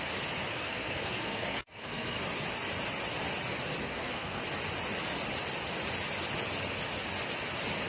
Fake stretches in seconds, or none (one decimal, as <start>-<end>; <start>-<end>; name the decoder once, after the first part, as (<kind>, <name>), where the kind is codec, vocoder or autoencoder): 0.5-2.2 (codec, SNAC); 3.8-4.4